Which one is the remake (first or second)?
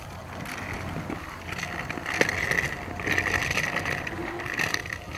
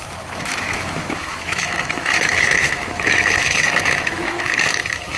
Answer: second